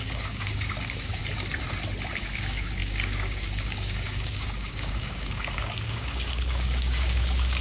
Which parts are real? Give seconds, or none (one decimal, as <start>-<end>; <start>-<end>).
1.2-2.1